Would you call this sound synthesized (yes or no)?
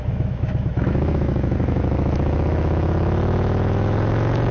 yes